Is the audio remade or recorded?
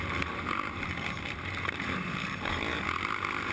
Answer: remade